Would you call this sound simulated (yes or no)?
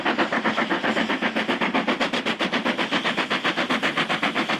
no